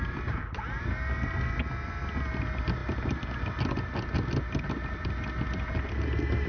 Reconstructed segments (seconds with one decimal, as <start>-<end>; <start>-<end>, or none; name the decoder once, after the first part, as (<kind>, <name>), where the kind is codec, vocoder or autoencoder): none